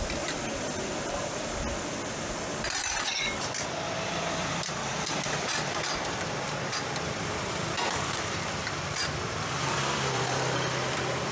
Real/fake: fake